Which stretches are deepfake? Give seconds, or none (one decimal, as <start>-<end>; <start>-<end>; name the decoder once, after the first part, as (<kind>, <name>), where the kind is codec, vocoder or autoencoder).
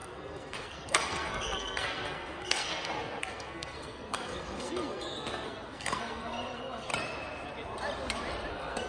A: 0.0-6.9 (codec, SNAC); 8.5-8.9